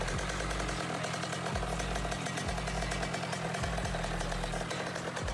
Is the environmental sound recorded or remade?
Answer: recorded